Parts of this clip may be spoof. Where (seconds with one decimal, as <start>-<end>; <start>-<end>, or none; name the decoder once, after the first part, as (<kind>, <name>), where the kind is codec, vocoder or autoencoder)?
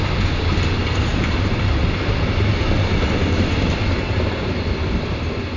none